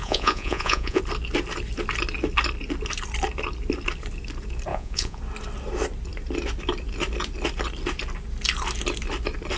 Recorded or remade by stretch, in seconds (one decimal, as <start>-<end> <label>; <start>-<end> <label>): 0.0-1.0 remade; 1.0-4.7 recorded; 4.7-5.2 remade; 5.2-9.6 recorded